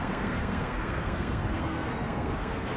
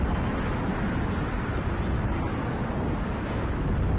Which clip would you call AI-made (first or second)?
first